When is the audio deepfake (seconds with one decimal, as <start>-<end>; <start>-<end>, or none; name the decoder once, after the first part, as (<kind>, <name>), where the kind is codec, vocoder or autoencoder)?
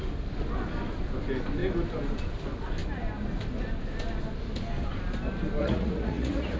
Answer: 5.6-6.6 (vocoder, Vocos)